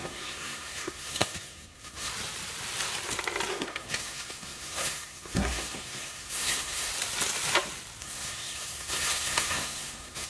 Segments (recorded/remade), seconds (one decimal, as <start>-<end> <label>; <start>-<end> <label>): 0.0-2.1 remade; 2.1-3.5 recorded; 3.5-6.9 remade; 6.9-8.0 recorded; 8.0-10.3 remade